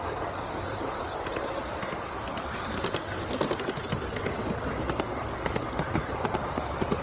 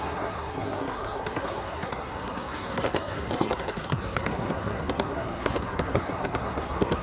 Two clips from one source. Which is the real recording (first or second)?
first